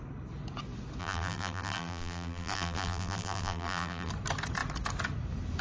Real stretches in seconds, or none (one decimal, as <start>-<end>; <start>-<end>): 0.0-1.0; 4.1-5.6